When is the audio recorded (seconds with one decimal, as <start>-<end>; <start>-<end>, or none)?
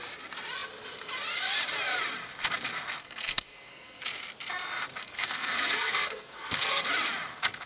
0.0-3.0; 4.0-5.0; 6.9-7.7